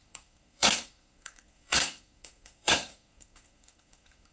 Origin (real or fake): fake